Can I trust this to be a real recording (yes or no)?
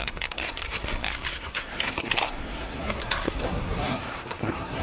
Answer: no